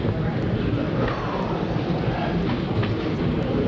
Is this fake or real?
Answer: fake